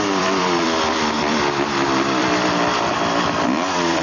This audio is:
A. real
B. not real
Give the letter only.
B